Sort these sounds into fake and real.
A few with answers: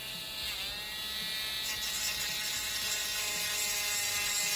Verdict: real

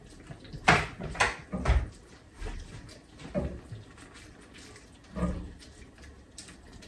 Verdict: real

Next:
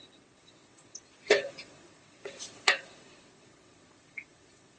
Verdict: fake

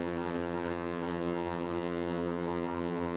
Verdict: fake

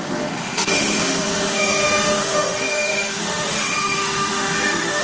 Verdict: fake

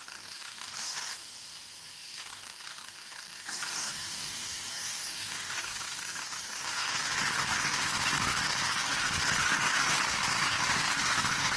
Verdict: fake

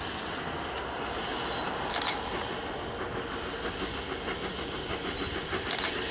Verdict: real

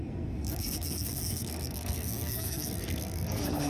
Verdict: fake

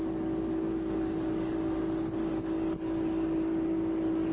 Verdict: fake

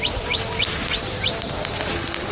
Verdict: real